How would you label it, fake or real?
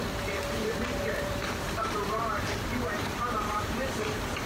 fake